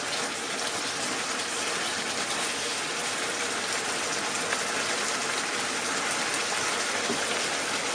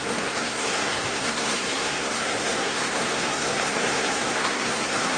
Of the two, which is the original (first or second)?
first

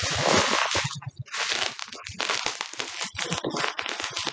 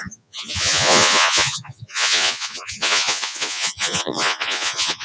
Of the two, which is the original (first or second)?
first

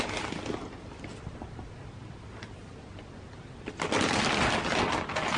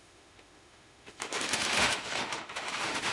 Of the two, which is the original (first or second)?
first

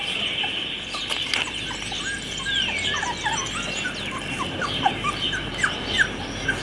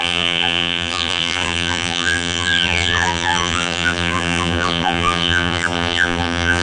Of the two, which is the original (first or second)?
first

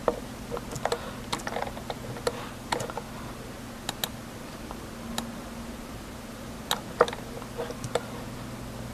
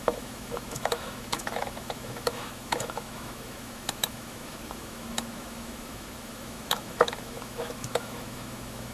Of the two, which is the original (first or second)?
first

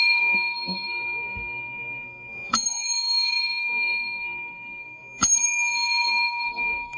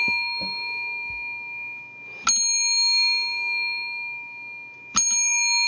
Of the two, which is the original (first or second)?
second